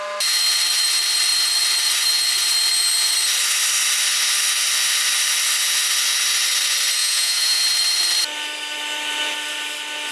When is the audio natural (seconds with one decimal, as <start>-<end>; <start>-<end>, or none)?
0.0-7.0; 7.6-10.1